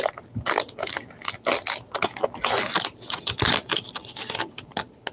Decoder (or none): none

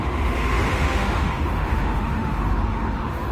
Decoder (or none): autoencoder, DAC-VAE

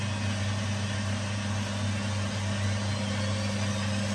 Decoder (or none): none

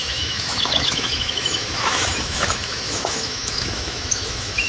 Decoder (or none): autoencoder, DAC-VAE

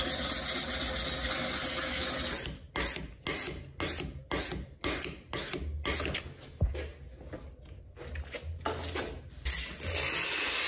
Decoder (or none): none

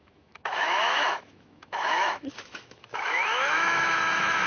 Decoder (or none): autoencoder, DAC-VAE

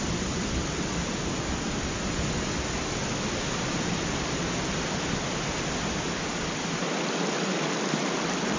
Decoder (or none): none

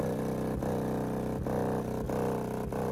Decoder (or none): none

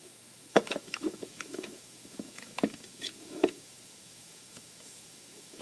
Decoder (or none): autoencoder, DAC-VAE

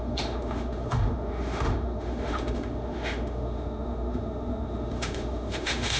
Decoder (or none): autoencoder, DAC-VAE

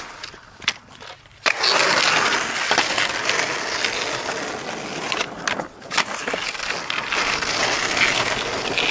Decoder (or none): none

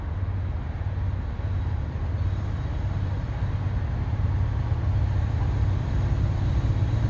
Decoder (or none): none